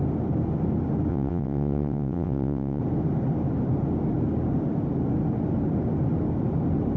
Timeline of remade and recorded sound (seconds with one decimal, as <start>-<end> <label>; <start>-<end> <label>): 0.0-1.1 recorded; 1.1-2.8 remade; 2.8-7.0 recorded